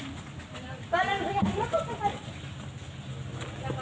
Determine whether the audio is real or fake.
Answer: real